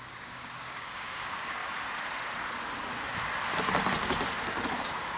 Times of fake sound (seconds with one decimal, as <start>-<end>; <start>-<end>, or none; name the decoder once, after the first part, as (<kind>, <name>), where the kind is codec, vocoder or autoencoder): 0.0-1.6 (codec, DAC); 4.7-5.2